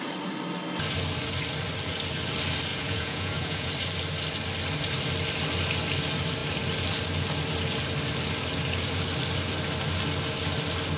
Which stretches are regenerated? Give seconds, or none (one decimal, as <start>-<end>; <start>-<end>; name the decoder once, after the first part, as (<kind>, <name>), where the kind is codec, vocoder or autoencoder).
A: 2.7-3.7 (vocoder, Vocos)